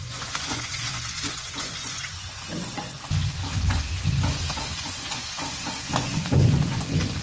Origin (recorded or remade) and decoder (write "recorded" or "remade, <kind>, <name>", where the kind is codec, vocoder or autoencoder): remade, vocoder, Vocos